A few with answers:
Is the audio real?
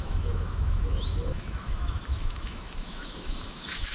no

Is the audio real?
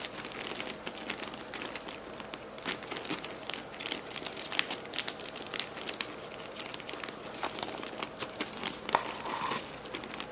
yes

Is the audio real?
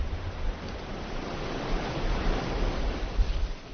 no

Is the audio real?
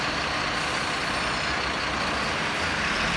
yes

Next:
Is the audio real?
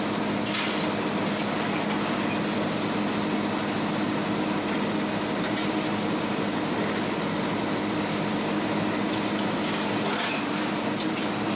yes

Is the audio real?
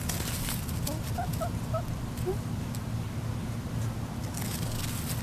yes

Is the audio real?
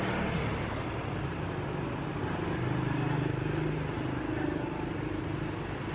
yes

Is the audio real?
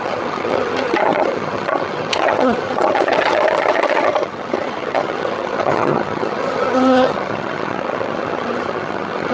no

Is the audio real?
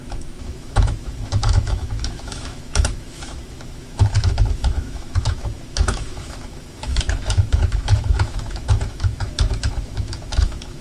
no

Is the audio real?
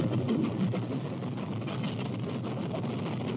yes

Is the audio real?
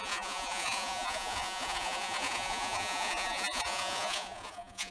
no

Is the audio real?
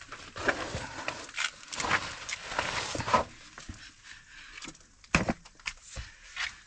yes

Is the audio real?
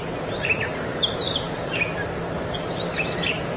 no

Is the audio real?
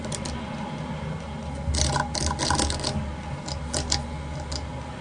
yes